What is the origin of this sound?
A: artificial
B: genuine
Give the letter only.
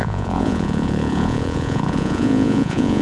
A